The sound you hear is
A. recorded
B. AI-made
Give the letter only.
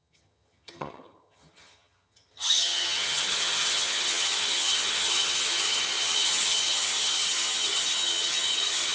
B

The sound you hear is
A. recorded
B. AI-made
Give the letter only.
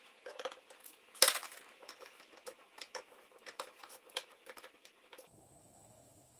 B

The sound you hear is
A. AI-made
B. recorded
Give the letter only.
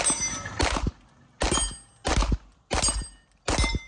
B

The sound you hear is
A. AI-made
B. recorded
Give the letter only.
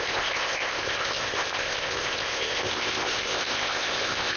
A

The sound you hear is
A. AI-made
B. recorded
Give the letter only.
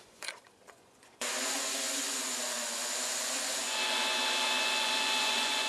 A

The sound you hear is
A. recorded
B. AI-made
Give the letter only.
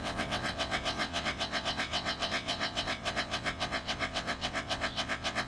B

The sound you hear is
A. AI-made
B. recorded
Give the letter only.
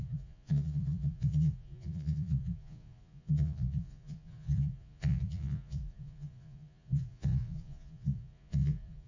A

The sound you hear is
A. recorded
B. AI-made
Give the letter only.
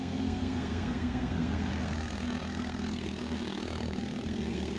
B